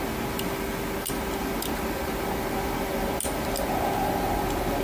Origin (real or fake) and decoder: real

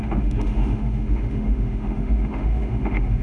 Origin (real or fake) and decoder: fake, autoencoder, DAC-VAE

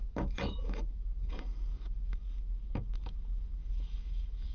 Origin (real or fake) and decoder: fake, autoencoder, DAC-VAE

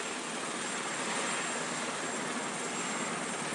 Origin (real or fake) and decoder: real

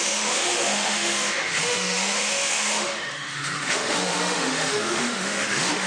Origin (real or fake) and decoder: fake, autoencoder, DAC-VAE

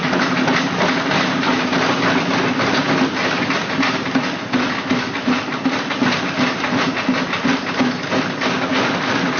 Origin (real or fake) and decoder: real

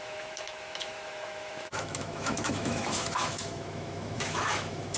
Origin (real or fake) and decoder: fake, autoencoder, DAC-VAE